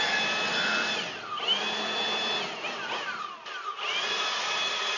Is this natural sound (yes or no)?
yes